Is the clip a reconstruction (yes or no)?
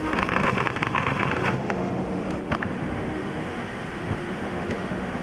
yes